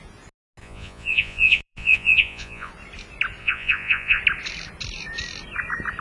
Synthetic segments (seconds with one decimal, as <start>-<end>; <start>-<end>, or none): 0.6-2.7; 3.4-4.2